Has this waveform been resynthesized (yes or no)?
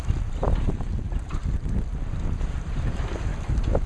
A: no